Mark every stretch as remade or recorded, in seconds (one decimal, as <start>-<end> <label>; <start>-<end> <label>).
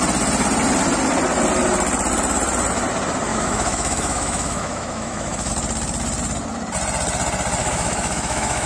0.0-3.3 recorded; 3.3-5.5 remade; 5.5-7.6 recorded; 7.6-8.7 remade